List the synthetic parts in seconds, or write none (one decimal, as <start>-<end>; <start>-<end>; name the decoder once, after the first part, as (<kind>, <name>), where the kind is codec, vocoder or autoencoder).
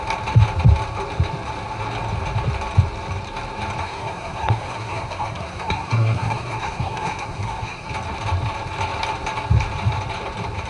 3.8-7.9 (codec, SNAC)